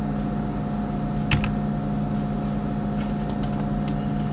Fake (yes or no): no